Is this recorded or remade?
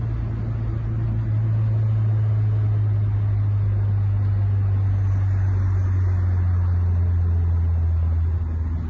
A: recorded